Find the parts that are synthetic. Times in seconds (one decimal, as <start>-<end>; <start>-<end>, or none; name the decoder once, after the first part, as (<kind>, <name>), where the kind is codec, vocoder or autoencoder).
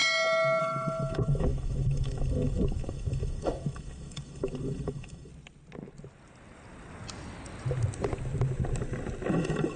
0.6-5.3 (autoencoder, DAC-VAE); 9.3-9.8